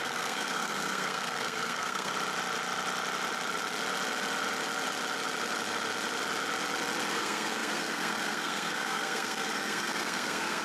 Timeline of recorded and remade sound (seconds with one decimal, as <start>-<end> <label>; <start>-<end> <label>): 0.0-2.1 remade; 2.1-7.1 recorded; 7.1-10.6 remade